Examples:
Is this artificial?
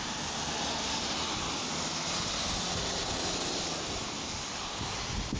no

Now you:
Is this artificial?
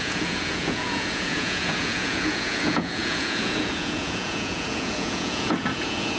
yes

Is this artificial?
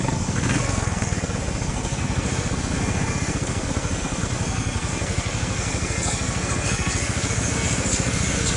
yes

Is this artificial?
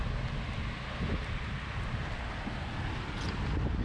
no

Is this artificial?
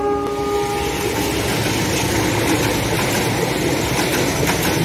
no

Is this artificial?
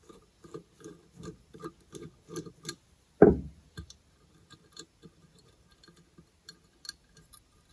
no